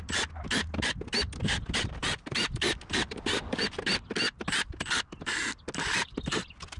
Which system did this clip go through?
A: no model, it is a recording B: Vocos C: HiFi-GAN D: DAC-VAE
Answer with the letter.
A